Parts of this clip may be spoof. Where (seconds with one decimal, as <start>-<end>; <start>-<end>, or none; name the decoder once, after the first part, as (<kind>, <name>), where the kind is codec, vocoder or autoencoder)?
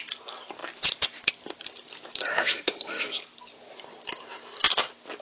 2.3-3.1 (autoencoder, DAC-VAE)